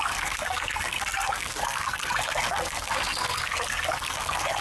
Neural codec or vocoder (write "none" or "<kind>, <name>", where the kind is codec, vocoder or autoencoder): codec, SNAC